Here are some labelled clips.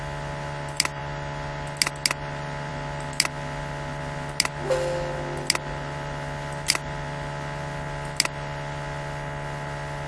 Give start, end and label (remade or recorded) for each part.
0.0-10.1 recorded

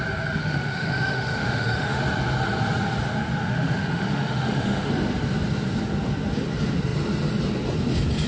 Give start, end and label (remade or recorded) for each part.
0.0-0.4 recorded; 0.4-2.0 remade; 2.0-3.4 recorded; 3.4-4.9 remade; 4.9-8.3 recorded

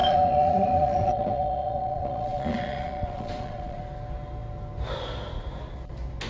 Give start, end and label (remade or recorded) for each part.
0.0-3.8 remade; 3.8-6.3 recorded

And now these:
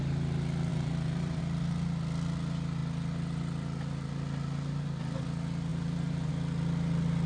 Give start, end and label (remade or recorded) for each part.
0.0-0.7 recorded; 0.7-1.4 remade; 1.4-5.7 recorded; 5.7-6.3 remade; 6.3-7.3 recorded

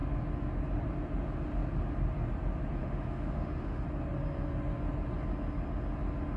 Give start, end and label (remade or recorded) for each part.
0.0-2.8 recorded; 2.8-3.8 remade; 3.8-6.4 recorded

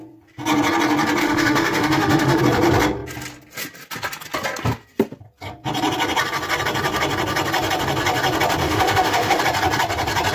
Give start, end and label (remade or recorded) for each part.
0.0-1.2 recorded; 1.2-2.4 remade; 2.4-8.6 recorded; 8.6-9.4 remade; 9.4-10.3 recorded

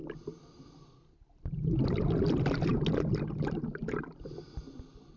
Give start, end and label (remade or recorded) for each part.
0.0-5.2 recorded